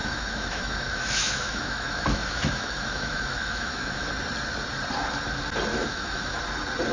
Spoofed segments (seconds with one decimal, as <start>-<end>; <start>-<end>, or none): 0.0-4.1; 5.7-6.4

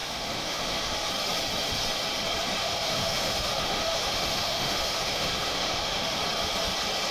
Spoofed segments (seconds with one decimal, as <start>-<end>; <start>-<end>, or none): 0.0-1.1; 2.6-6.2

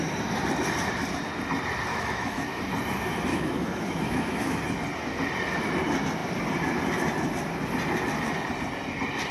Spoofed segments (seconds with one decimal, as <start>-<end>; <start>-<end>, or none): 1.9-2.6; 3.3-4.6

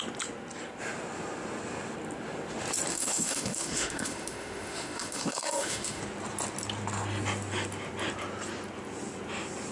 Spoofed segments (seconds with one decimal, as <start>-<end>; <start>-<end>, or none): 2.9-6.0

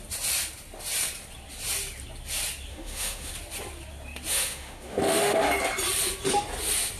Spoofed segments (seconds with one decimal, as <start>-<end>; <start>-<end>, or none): 2.7-3.3; 4.3-5.4

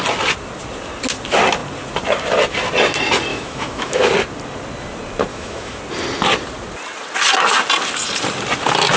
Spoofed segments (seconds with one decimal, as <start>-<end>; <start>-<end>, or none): 3.3-4.1; 5.3-5.8

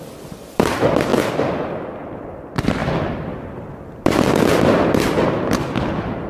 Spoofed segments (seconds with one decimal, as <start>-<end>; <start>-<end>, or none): none